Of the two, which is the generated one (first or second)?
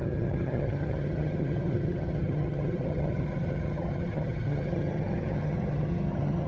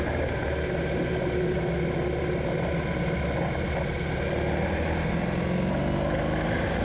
first